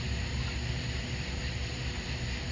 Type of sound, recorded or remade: recorded